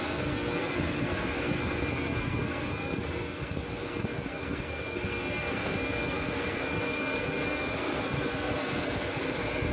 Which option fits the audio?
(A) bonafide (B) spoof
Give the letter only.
B